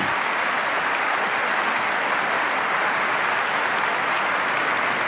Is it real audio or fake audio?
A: real